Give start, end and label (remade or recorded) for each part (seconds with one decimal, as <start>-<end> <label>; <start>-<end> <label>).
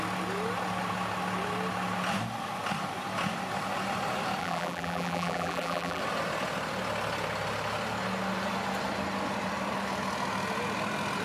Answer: 0.0-4.4 recorded; 4.4-6.0 remade; 6.0-11.2 recorded